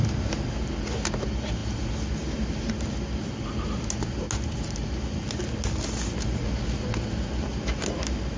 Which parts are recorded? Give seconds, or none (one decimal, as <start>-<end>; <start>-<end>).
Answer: 0.0-8.4